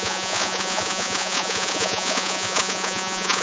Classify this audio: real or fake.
fake